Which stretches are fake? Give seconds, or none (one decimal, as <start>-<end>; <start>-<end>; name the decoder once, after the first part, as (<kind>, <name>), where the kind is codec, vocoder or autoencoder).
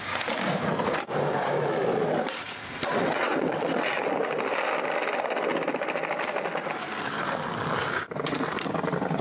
3.0-4.1 (vocoder, WaveNeXt)